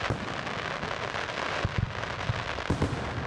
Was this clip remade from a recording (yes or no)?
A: no